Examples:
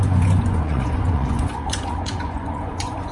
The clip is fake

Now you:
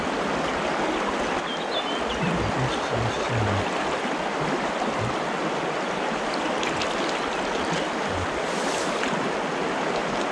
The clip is real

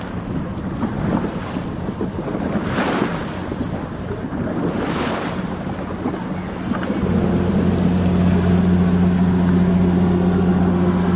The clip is real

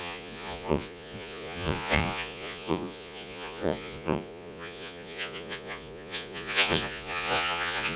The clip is fake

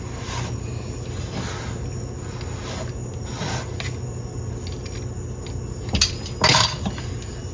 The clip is real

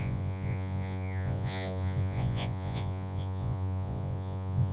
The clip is fake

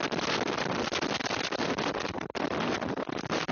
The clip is real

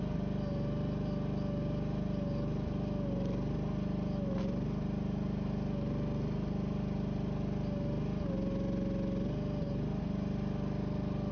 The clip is real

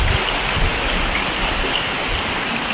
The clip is real